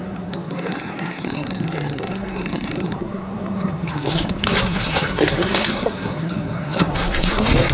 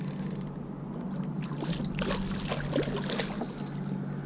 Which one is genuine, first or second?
second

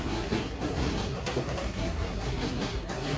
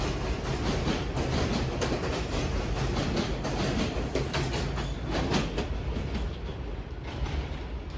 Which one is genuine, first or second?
second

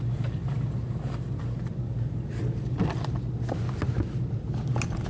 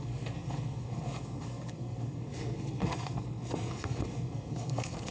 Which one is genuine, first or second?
first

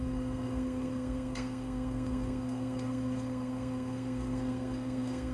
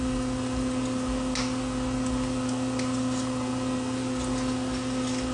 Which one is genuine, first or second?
second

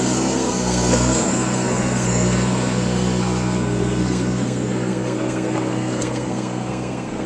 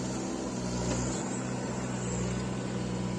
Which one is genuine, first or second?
second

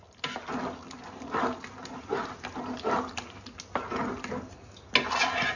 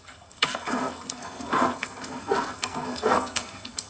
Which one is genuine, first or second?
first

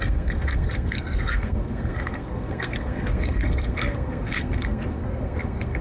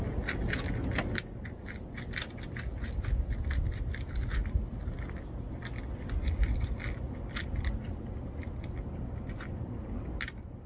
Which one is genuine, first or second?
second